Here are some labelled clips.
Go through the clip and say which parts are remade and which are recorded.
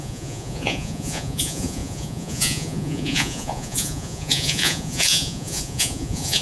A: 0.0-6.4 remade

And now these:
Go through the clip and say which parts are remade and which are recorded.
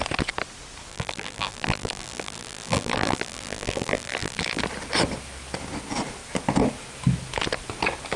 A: 0.0-0.9 recorded; 0.9-4.6 remade; 4.6-8.2 recorded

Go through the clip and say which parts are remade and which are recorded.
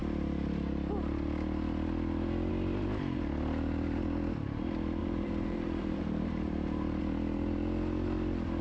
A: 0.0-5.0 recorded; 5.0-7.0 remade; 7.0-8.6 recorded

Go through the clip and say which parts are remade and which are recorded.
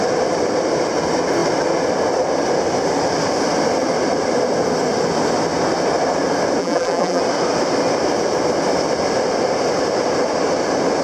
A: 0.0-6.6 recorded; 6.6-7.2 remade; 7.2-11.0 recorded